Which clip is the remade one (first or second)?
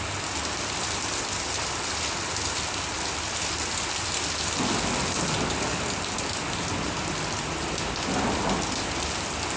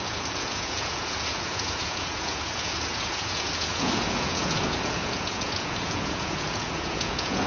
second